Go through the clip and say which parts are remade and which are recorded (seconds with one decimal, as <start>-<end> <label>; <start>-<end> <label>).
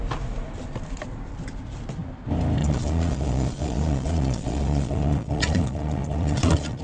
0.0-2.6 recorded; 2.6-6.8 remade